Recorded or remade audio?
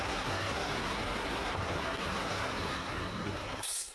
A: remade